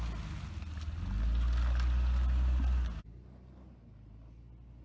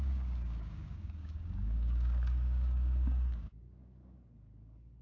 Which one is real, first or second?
first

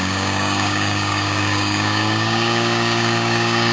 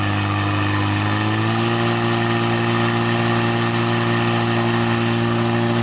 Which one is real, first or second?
second